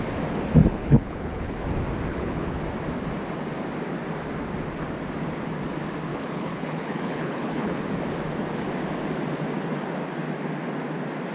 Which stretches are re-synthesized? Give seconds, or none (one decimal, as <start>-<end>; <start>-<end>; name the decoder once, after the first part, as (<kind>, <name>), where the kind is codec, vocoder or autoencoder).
0.6-1.6 (codec, HILCodec); 2.1-2.6; 6.1-7.8